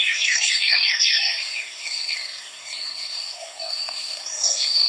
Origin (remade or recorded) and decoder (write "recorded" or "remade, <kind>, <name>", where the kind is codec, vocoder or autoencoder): remade, codec, SNAC